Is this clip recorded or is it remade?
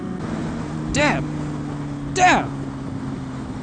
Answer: recorded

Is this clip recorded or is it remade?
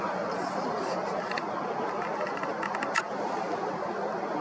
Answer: recorded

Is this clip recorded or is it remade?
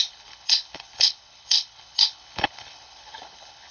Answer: remade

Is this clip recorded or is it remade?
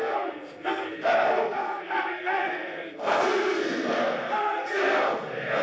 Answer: remade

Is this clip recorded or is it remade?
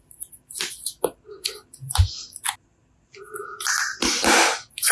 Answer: recorded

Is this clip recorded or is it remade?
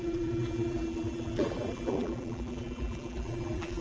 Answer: remade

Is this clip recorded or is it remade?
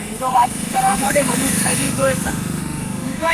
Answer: remade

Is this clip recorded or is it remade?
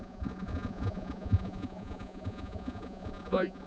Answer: remade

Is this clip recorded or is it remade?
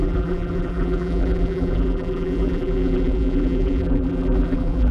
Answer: remade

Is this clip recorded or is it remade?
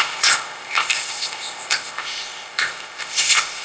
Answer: remade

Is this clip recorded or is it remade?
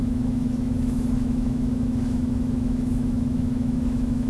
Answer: remade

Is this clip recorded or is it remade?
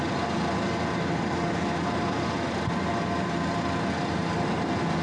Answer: recorded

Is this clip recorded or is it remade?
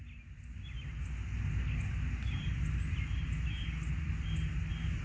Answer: recorded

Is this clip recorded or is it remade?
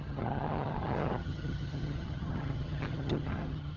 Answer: remade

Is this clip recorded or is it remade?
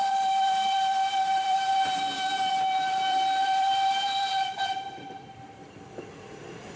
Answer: remade